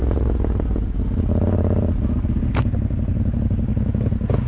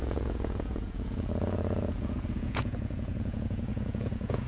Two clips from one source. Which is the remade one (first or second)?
second